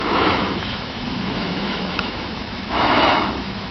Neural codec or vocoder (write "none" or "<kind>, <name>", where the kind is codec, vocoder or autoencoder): autoencoder, DAC-VAE